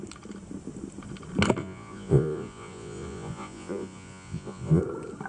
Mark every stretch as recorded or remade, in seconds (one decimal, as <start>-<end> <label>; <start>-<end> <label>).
0.0-1.6 recorded; 1.6-4.8 remade; 4.8-5.3 recorded